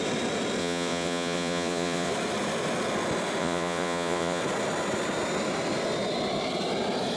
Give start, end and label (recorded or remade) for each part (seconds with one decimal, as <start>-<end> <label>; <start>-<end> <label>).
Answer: 0.0-0.6 recorded; 0.6-2.1 remade; 2.1-3.4 recorded; 3.4-4.4 remade; 4.4-7.2 recorded